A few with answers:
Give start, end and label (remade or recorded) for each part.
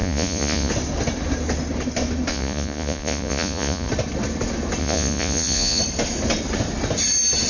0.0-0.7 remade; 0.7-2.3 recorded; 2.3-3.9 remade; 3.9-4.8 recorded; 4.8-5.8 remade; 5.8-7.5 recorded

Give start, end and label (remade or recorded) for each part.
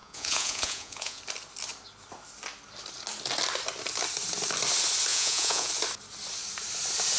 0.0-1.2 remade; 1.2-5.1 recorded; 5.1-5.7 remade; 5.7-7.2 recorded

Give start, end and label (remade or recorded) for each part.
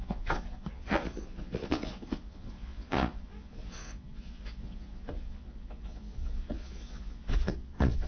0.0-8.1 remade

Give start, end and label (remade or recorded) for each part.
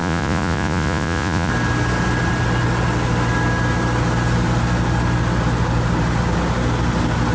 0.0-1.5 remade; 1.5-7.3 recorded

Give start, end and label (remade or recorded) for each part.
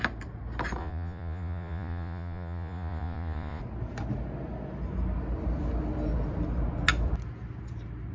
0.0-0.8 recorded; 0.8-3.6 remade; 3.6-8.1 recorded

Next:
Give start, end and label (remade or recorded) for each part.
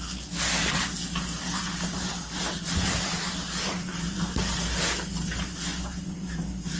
0.0-5.7 recorded; 5.7-6.3 remade; 6.3-6.8 recorded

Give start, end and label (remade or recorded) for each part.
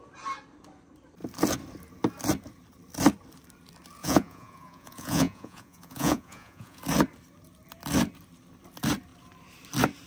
0.0-4.0 recorded; 4.0-6.8 remade; 6.8-10.1 recorded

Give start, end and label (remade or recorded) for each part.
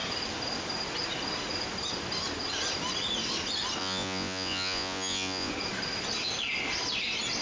0.0-3.8 recorded; 3.8-5.5 remade; 5.5-7.4 recorded